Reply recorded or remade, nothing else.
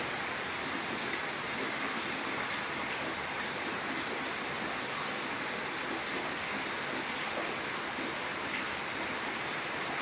recorded